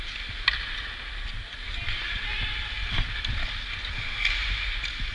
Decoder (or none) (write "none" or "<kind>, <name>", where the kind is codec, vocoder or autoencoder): none